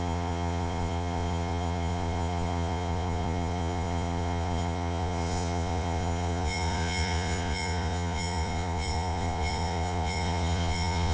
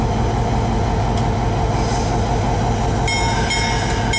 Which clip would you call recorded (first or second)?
second